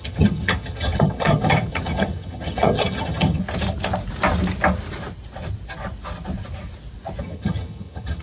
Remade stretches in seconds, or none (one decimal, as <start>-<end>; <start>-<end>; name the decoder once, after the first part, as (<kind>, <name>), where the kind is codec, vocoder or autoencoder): 0.0-3.4 (vocoder, HiFi-GAN); 7.2-8.2